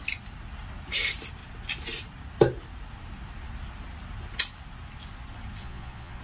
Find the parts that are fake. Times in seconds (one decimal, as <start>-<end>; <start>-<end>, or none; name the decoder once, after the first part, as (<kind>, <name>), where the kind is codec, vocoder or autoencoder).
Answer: 5.6-6.2 (vocoder, Vocos)